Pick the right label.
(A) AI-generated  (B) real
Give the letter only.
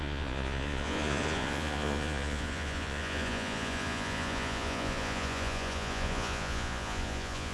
A